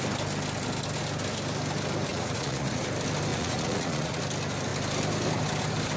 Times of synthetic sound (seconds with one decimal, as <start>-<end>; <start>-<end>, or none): 2.1-2.8; 3.3-4.2

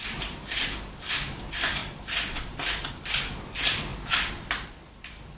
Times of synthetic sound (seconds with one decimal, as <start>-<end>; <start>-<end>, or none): 1.8-2.9; 3.9-5.4

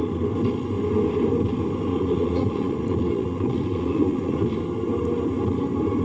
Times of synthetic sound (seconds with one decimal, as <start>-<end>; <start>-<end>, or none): 1.9-4.4

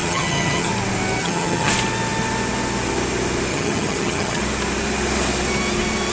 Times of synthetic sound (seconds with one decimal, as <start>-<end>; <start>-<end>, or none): 0.0-0.7; 1.2-1.7; 3.5-4.4